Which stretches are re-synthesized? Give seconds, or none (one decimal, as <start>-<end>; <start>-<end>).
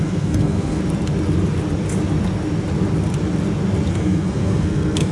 0.0-0.8; 3.9-5.1